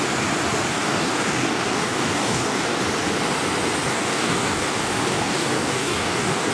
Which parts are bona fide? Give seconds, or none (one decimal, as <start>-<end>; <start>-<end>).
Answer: 0.0-0.7; 2.8-3.9